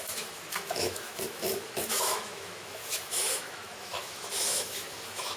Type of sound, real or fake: fake